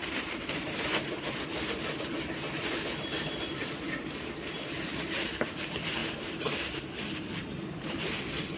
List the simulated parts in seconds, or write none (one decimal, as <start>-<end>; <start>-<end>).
0.0-8.6